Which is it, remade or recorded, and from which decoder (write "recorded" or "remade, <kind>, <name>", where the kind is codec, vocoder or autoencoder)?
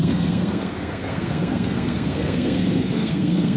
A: remade, codec, SNAC